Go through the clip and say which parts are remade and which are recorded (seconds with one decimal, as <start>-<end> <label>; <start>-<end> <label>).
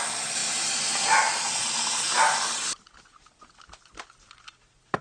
0.0-5.0 recorded